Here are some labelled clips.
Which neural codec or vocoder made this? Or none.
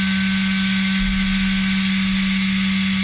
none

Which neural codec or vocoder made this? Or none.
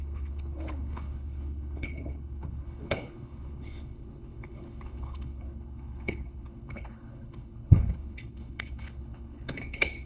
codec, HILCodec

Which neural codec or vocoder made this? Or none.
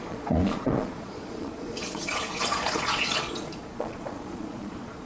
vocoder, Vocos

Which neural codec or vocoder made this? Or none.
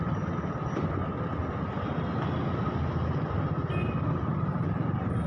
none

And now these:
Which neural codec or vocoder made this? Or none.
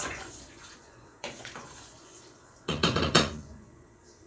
vocoder, Vocos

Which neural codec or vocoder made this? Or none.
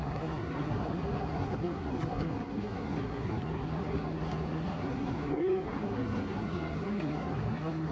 codec, SNAC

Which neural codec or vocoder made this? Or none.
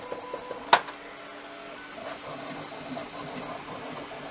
none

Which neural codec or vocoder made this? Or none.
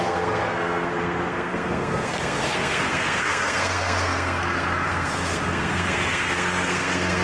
codec, SNAC